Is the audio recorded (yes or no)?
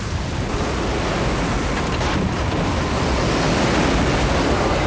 yes